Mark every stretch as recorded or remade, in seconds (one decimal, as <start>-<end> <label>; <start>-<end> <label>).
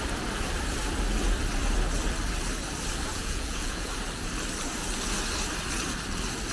0.0-3.1 recorded; 3.1-3.9 remade; 3.9-6.5 recorded